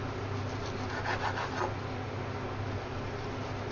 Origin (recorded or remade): recorded